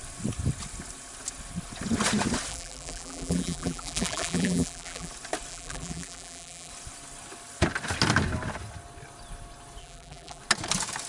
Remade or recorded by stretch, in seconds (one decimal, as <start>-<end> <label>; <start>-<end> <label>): 0.0-2.5 recorded; 2.5-5.1 remade; 5.1-5.5 recorded; 5.5-6.7 remade; 6.7-9.8 recorded; 9.8-10.4 remade; 10.4-11.1 recorded